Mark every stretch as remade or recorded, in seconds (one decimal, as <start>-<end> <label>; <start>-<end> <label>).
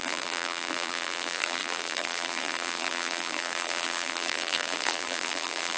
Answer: 0.0-5.8 remade